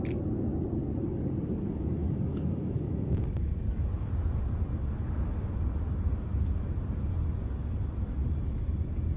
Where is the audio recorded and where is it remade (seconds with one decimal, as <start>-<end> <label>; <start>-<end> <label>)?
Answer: 0.0-2.0 recorded; 2.0-3.5 remade; 3.5-9.2 recorded